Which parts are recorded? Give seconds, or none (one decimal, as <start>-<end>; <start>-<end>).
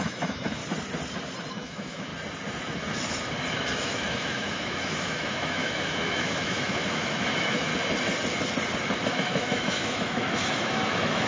0.6-1.5; 2.1-3.8; 7.7-9.1